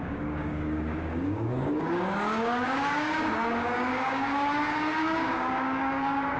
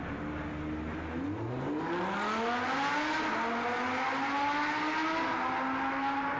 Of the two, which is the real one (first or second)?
second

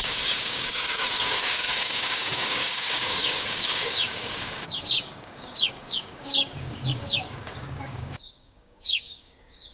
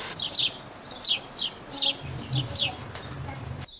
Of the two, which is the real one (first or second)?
second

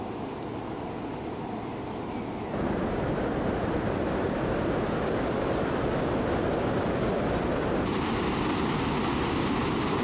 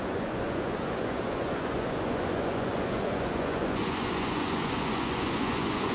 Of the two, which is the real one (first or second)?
first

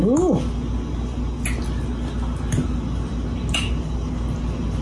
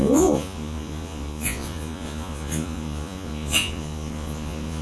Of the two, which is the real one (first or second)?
first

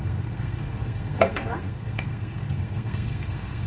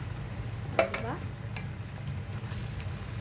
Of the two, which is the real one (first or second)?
second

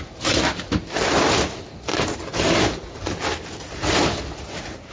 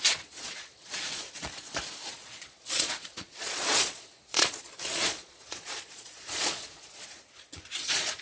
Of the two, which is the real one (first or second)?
first